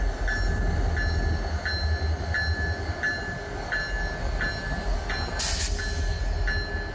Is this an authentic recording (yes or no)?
yes